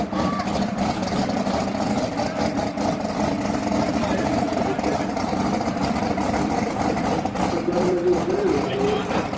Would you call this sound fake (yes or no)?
yes